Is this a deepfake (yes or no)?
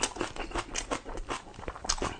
no